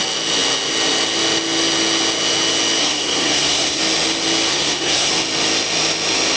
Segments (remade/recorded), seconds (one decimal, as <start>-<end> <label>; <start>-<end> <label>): 0.0-2.8 recorded; 2.8-3.8 remade; 3.8-4.5 recorded; 4.5-5.1 remade; 5.1-6.4 recorded